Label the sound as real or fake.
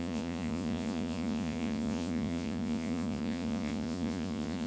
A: fake